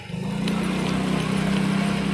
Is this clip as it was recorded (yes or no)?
yes